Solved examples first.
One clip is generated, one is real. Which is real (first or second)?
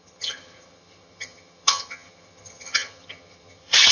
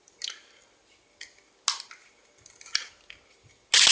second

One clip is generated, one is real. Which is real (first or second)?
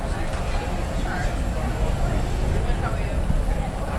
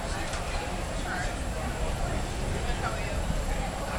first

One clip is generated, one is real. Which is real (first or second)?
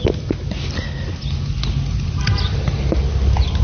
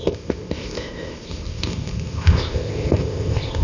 first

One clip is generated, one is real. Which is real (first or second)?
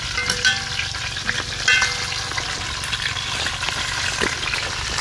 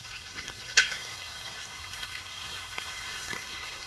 first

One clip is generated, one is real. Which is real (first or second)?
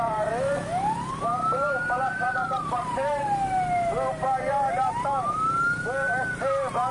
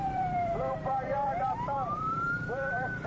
first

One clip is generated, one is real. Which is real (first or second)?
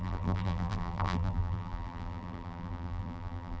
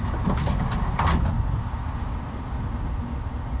second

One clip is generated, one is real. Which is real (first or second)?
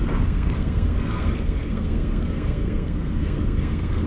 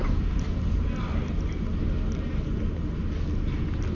second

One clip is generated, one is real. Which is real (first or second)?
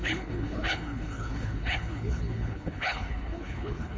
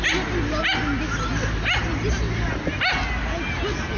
second